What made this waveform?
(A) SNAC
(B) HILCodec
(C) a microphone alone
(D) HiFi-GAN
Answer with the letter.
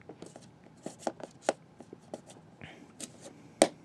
C